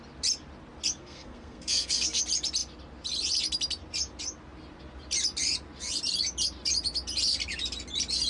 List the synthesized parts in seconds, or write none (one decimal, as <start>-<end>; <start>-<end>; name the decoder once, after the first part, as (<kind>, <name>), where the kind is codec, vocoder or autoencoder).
1.0-2.2 (codec, SNAC)